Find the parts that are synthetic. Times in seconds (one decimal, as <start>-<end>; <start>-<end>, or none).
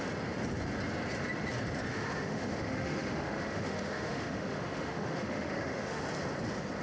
1.9-6.0